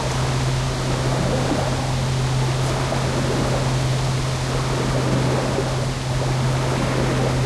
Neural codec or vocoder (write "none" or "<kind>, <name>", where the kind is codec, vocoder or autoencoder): none